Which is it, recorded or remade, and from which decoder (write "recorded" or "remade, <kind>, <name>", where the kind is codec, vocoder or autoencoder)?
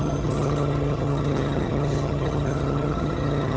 remade, vocoder, HiFi-GAN